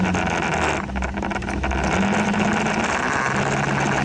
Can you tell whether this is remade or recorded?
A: recorded